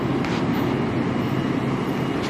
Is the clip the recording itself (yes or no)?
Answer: yes